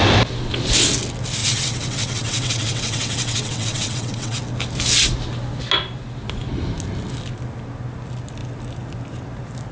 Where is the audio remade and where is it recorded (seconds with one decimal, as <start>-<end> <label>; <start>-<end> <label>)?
0.0-1.4 recorded; 1.4-4.4 remade; 4.4-9.7 recorded